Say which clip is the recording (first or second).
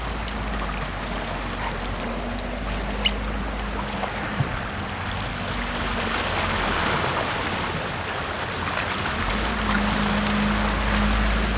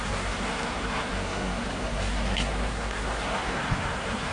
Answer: first